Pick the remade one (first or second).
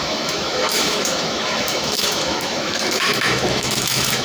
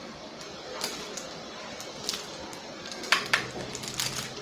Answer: first